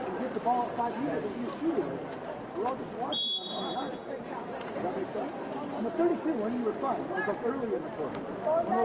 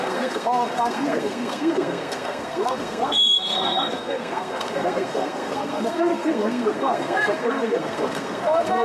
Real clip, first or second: first